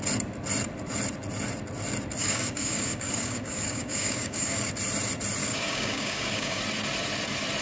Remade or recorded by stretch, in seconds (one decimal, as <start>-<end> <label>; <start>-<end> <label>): 0.0-2.2 recorded; 2.2-4.7 remade; 4.7-5.4 recorded; 5.4-6.6 remade; 6.6-7.6 recorded